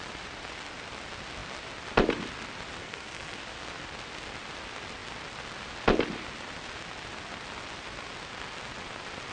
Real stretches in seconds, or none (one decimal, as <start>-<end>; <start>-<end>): 0.0-2.8; 3.4-9.3